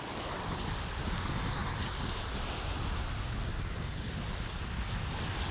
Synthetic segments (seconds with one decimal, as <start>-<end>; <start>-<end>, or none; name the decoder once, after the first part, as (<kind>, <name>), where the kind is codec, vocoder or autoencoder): none